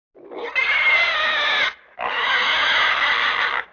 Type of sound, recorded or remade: recorded